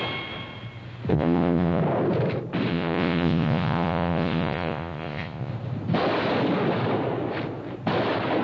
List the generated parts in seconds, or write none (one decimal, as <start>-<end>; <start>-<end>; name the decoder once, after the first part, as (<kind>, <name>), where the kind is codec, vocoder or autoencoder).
1.1-1.8 (vocoder, Vocos); 2.7-5.5